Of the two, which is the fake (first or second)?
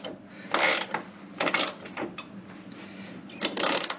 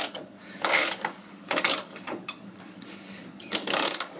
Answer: second